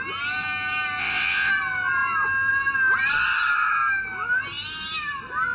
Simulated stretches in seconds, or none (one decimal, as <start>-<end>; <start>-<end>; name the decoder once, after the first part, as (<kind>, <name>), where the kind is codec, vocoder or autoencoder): 1.0-1.5 (vocoder, WaveNeXt)